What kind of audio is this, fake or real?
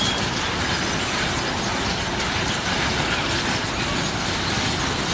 real